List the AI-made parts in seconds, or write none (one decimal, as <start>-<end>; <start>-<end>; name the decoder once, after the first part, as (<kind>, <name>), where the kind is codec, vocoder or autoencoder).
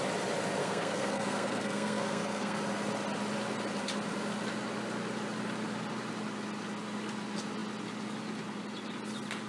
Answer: 0.6-2.6 (codec, SNAC)